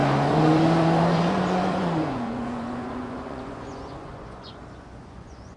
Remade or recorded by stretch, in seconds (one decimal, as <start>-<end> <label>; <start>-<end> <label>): 0.0-5.6 remade